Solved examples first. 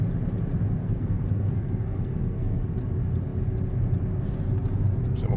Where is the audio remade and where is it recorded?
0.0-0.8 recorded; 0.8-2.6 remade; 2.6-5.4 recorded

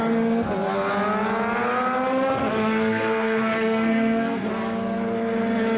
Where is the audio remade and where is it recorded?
0.0-2.5 recorded; 2.5-4.5 remade; 4.5-5.8 recorded